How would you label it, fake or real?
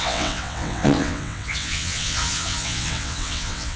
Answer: fake